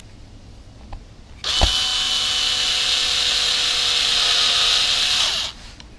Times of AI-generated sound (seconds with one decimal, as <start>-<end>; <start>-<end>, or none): none